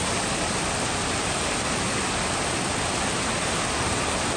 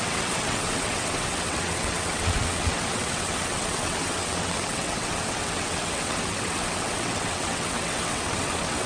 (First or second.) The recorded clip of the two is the first